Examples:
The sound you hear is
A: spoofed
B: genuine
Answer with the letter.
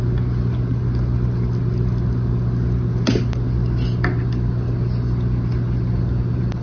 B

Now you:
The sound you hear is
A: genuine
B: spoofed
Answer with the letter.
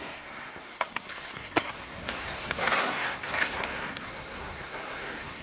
B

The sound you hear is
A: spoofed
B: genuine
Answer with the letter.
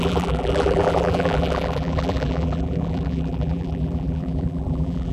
A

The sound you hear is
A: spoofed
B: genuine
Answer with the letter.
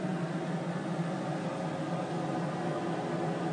B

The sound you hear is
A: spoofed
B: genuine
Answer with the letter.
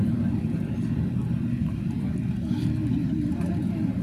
B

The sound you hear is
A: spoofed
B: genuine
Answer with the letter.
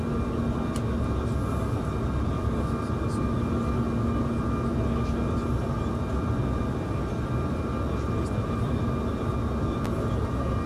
B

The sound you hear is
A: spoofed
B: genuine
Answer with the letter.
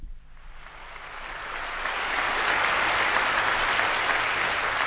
B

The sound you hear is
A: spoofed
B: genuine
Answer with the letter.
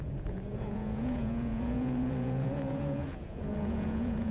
A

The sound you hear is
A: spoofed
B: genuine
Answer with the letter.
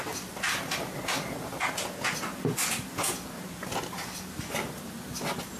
B